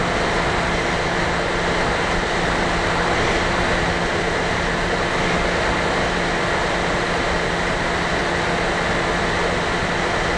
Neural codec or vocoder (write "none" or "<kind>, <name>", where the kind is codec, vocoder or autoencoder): none